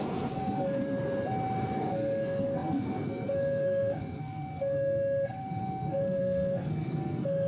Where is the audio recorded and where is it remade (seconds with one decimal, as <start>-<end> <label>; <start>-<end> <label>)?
0.0-0.8 remade; 0.8-1.8 recorded; 1.8-7.5 remade